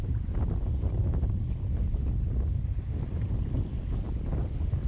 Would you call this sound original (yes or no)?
yes